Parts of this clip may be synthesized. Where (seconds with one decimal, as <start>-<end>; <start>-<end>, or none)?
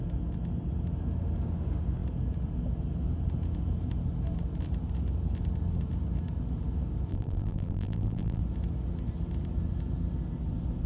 7.1-8.4